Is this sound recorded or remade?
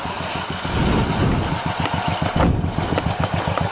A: recorded